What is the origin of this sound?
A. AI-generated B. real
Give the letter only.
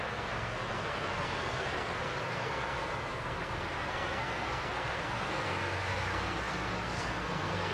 A